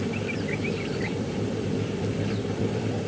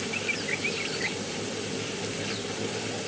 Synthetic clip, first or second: first